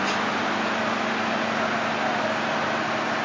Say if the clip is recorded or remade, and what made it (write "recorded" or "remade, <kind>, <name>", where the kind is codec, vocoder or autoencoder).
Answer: recorded